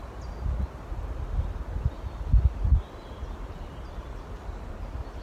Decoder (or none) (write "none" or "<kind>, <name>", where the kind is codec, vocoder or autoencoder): none